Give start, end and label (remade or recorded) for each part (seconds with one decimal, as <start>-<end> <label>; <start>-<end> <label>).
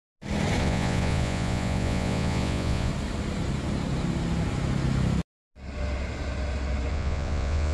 0.0-0.6 recorded; 0.6-2.9 remade; 2.9-6.9 recorded; 6.9-7.7 remade